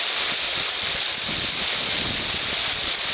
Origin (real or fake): real